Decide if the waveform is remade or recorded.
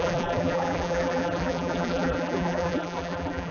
remade